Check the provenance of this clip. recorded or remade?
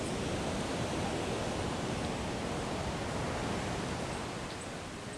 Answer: recorded